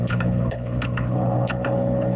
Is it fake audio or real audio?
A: fake